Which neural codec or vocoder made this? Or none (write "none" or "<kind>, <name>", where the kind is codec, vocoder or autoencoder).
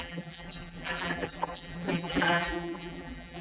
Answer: vocoder, BigVGAN v2